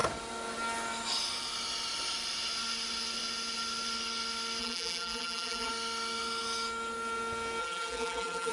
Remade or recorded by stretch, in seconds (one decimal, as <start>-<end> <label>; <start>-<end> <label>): 0.0-4.6 recorded; 4.6-5.7 remade; 5.7-7.6 recorded; 7.6-8.5 remade